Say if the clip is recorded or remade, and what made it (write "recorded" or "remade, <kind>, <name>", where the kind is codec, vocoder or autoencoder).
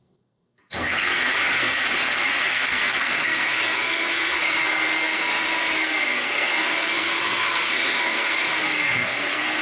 remade, codec, SNAC